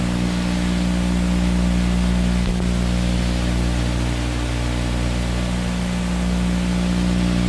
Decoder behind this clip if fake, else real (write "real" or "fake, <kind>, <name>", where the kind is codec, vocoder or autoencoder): real